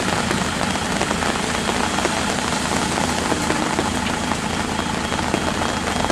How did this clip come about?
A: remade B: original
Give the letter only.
B